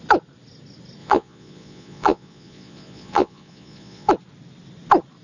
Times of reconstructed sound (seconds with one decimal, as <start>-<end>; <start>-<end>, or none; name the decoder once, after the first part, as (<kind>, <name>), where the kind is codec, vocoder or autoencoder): 1.0-4.1 (vocoder, Vocos)